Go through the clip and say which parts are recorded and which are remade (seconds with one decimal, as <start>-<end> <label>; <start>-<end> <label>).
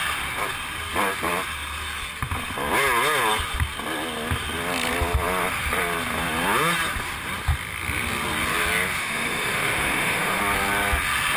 0.0-9.0 recorded; 9.0-10.4 remade; 10.4-11.4 recorded